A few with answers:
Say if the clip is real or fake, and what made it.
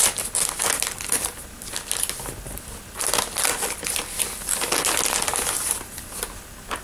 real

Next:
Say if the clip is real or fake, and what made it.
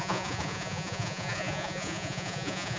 fake, vocoder, Vocos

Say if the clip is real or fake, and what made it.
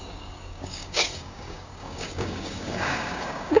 fake, codec, DAC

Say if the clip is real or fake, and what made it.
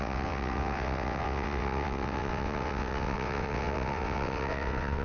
fake, vocoder, WaveNeXt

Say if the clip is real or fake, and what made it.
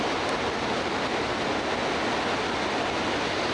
real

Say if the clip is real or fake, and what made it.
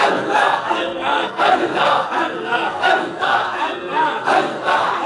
fake, codec, SNAC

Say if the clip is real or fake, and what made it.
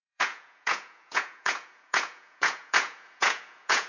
fake, vocoder, Vocos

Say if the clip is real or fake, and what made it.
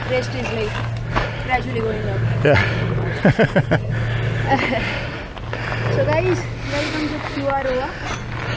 real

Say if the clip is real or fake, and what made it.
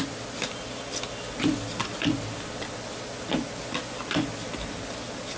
real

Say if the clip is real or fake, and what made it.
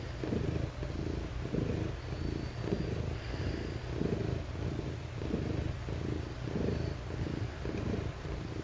real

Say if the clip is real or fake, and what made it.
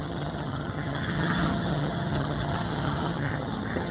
fake, vocoder, HiFi-GAN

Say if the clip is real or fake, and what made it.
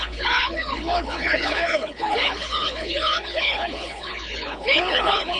fake, codec, HILCodec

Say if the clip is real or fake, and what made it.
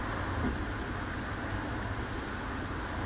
real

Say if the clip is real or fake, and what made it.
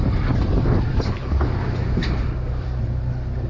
real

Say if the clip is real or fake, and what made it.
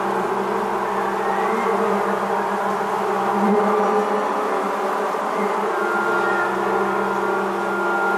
real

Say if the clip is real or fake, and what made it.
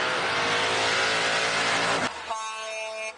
real